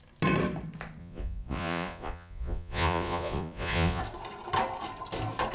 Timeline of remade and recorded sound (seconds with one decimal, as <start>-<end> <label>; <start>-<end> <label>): 0.0-1.0 recorded; 1.0-4.0 remade; 4.0-5.5 recorded